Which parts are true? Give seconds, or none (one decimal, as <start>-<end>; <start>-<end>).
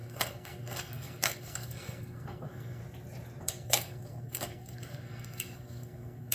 2.8-3.4